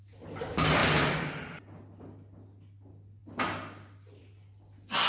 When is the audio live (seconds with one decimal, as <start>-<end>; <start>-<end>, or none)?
0.0-5.1